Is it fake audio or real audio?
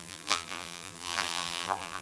fake